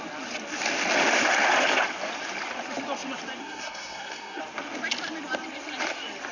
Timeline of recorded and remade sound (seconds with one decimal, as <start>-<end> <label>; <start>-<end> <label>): 0.0-3.4 recorded; 3.4-4.4 remade; 4.4-6.3 recorded